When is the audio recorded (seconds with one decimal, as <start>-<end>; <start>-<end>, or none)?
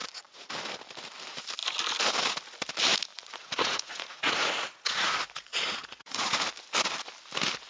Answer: 0.5-3.1; 6.4-7.7